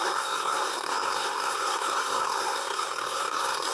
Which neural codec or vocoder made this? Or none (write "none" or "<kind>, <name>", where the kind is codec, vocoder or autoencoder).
codec, SNAC